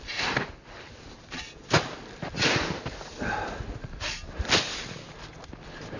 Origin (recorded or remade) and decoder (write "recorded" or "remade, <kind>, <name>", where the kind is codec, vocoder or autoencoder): recorded